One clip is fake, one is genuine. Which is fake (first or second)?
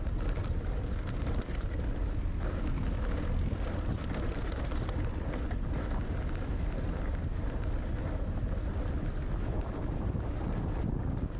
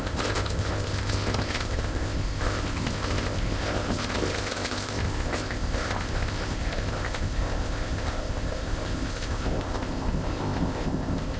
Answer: second